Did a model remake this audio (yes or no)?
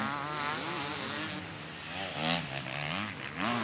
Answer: no